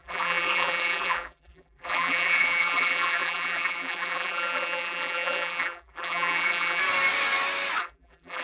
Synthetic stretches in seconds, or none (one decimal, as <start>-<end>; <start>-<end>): 0.0-6.8; 7.8-8.4

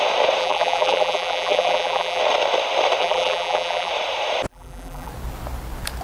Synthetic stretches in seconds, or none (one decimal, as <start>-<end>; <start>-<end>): 0.4-2.2; 3.0-3.9; 4.5-5.1

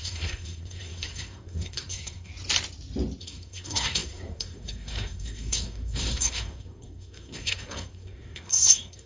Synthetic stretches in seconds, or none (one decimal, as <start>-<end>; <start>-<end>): 0.0-2.3; 3.2-9.1

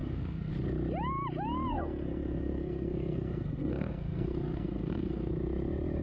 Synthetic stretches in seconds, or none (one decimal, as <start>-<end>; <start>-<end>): 0.0-0.5; 1.7-5.3

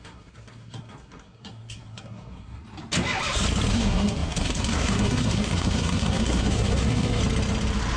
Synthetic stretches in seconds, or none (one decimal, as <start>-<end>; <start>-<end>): 0.0-2.6; 3.7-7.2

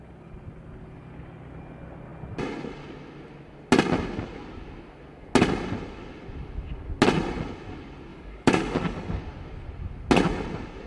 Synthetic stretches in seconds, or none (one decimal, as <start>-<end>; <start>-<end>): 8.1-9.2

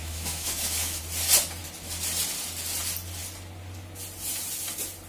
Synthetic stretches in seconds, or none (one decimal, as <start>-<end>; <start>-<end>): 0.0-1.0

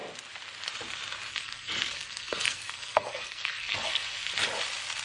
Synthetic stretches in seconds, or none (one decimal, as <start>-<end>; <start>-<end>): 1.3-4.3